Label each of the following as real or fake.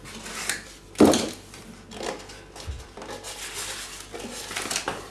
real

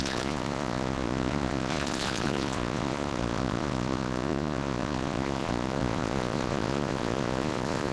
fake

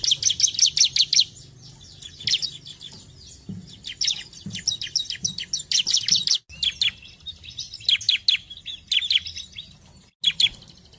real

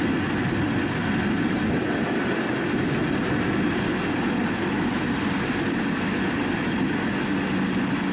real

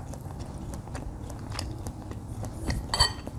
real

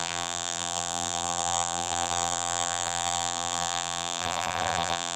fake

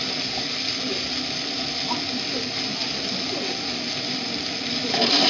real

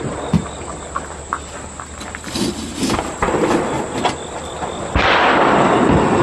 real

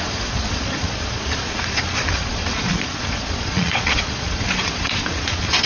fake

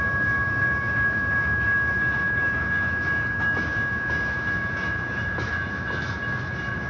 fake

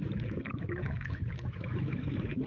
fake